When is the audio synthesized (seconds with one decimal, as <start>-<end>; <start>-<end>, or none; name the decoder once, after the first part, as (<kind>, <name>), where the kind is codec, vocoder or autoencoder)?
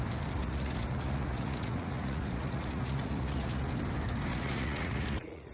0.4-3.7 (vocoder, Vocos); 4.3-5.5